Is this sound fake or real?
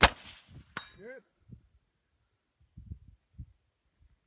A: real